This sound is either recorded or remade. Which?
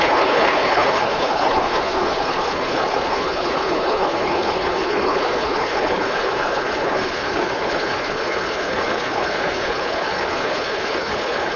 remade